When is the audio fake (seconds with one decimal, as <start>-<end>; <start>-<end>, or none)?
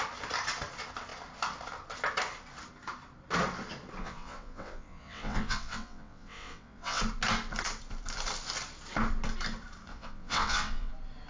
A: 4.0-7.0; 9.9-10.9